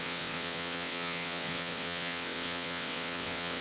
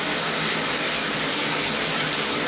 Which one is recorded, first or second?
second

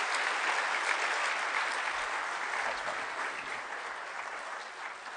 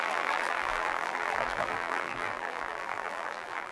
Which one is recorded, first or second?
first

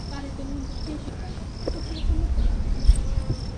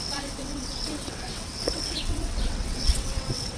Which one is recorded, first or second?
first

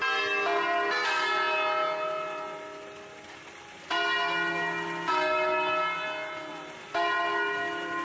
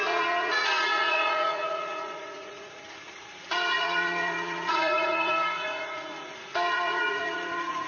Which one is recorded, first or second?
first